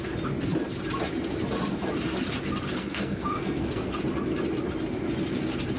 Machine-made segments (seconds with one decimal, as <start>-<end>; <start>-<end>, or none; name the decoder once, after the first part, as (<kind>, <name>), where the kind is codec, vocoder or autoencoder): 2.8-4.0 (codec, SNAC)